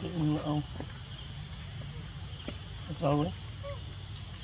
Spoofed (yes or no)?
no